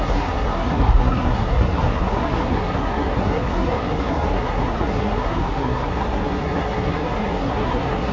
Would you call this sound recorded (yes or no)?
no